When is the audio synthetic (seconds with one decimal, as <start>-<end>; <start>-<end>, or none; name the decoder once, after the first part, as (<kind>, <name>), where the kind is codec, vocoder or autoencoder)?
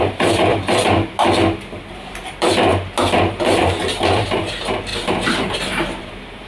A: 0.0-0.5 (vocoder, BigVGAN v2); 1.8-2.7; 3.6-6.5